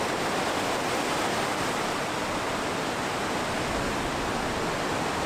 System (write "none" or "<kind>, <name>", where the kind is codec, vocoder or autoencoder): none